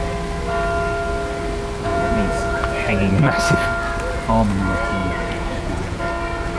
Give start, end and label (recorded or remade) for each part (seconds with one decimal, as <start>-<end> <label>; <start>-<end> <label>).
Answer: 0.0-1.9 recorded; 1.9-3.1 remade; 3.1-5.0 recorded; 5.0-6.0 remade; 6.0-6.6 recorded